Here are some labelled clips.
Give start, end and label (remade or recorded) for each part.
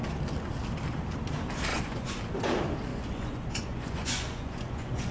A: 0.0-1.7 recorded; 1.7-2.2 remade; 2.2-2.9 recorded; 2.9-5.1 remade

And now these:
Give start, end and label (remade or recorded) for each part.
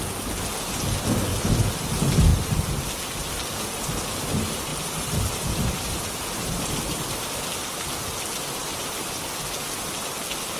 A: 0.0-1.3 recorded; 1.3-1.9 remade; 1.9-4.7 recorded; 4.7-7.2 remade; 7.2-10.6 recorded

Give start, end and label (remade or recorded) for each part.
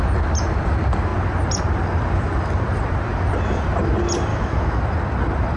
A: 0.0-4.3 recorded; 4.3-4.8 remade; 4.8-5.6 recorded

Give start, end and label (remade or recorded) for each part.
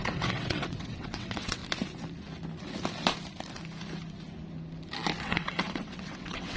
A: 0.0-1.6 remade; 1.6-5.2 recorded; 5.2-6.6 remade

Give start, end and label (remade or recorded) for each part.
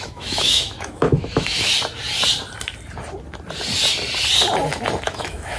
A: 0.0-1.7 remade; 1.7-5.1 recorded; 5.1-5.6 remade